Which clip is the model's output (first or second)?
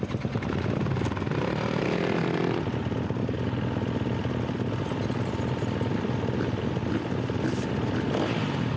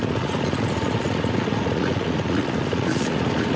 second